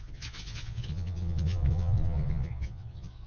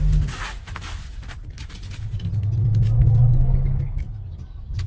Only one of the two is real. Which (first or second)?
second